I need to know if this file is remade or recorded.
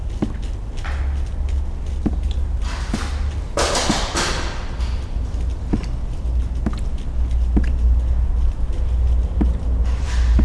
recorded